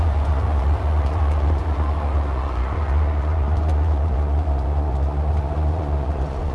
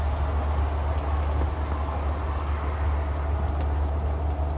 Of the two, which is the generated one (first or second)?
first